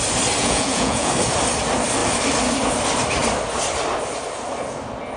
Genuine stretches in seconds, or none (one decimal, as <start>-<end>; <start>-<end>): 0.0-0.4; 1.1-5.2